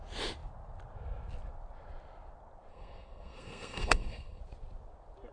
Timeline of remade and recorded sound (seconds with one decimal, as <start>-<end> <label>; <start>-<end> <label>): 0.0-2.7 recorded; 2.7-4.4 remade; 4.4-5.3 recorded